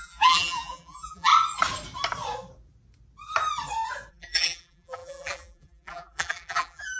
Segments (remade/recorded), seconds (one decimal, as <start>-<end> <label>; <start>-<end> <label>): 0.0-1.3 remade; 1.3-4.1 recorded; 4.1-7.0 remade